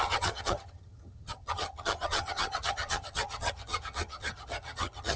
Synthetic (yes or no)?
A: yes